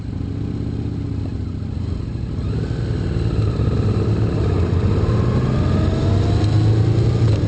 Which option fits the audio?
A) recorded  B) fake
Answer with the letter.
A